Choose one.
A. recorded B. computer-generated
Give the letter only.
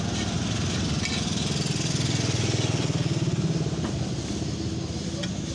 A